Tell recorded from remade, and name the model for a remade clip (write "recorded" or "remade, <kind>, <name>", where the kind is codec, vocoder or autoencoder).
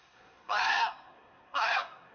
remade, codec, SNAC